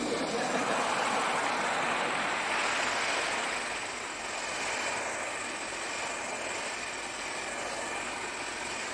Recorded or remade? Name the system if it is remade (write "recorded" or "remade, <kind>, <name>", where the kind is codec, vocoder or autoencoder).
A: recorded